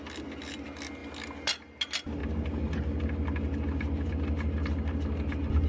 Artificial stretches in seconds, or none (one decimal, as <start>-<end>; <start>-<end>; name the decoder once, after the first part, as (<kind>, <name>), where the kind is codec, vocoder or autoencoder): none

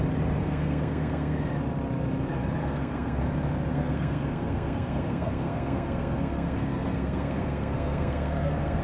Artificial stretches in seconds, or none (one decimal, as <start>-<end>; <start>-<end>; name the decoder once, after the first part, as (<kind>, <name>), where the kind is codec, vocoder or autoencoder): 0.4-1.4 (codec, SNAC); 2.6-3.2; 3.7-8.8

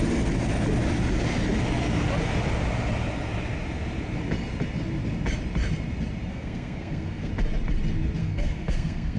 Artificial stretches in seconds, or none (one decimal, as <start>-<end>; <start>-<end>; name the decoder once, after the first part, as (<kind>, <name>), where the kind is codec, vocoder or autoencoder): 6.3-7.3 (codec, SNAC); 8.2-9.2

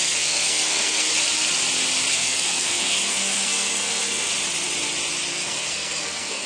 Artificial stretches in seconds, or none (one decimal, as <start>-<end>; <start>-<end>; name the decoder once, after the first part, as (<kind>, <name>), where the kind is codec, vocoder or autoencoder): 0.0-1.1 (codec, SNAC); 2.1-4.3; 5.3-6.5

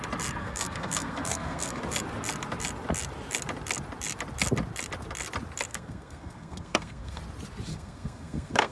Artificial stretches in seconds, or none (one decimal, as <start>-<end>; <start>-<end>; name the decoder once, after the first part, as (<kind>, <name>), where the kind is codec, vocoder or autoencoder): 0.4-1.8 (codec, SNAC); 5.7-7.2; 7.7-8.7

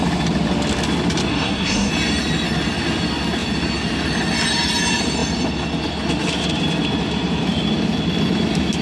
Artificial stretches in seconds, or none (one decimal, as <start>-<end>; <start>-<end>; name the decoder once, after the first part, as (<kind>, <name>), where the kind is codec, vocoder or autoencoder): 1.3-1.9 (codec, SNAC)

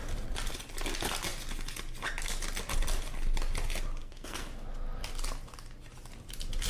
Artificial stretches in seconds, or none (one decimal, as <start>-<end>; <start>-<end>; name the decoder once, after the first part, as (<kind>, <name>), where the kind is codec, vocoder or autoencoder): 4.0-4.5 (codec, SNAC)